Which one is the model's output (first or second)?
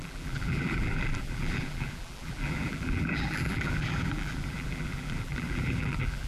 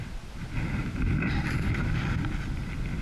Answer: first